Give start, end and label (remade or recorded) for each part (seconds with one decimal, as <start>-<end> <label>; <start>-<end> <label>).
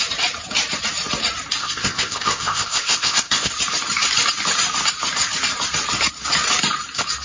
0.0-1.6 recorded; 1.6-3.5 remade; 3.5-7.2 recorded